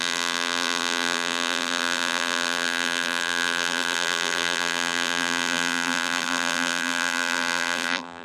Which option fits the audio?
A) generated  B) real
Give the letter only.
A